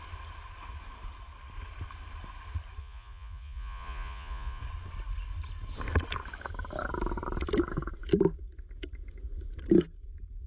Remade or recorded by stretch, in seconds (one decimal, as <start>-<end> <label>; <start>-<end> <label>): 0.0-2.8 recorded; 2.8-4.6 remade; 4.6-10.5 recorded